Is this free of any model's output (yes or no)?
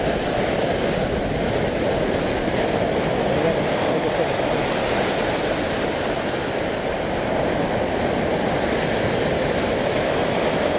yes